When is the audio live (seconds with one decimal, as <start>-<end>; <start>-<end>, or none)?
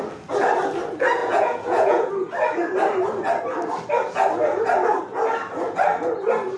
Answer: 0.0-1.2; 2.1-6.6